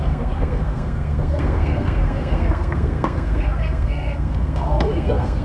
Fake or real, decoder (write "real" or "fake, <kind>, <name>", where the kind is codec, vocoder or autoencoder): fake, codec, SNAC